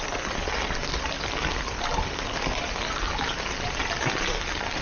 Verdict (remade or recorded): recorded